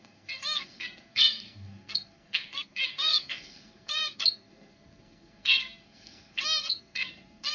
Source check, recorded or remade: remade